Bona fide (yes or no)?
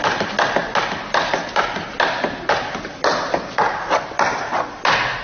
yes